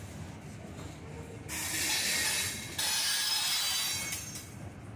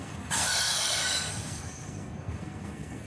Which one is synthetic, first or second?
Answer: second